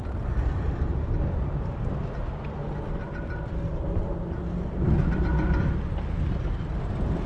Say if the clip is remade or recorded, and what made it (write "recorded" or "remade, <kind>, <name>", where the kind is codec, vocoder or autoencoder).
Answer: recorded